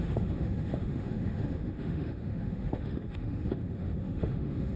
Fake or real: fake